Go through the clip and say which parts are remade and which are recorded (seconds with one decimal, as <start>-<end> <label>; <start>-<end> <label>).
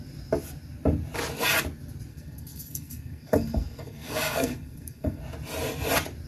0.0-2.1 recorded; 2.1-5.2 remade; 5.2-6.3 recorded